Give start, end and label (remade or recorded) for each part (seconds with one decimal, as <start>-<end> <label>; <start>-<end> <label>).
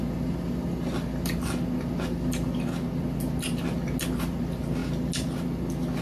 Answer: 0.0-6.0 recorded